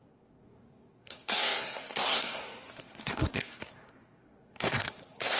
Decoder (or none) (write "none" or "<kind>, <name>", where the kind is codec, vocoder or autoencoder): codec, SNAC